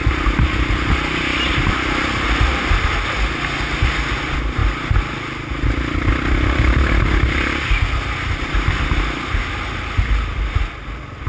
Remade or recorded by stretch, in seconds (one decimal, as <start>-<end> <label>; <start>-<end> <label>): 0.0-11.3 recorded